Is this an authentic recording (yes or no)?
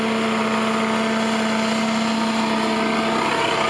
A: yes